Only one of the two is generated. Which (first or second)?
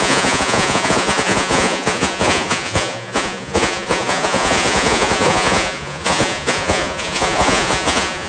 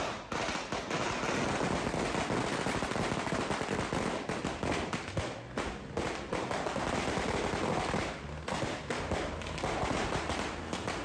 first